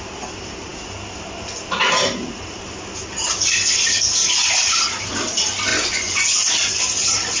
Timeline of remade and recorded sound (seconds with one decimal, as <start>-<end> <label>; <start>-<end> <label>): 0.0-5.7 recorded; 5.7-6.4 remade; 6.4-7.4 recorded